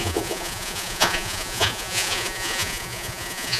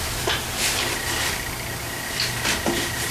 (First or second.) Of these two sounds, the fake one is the first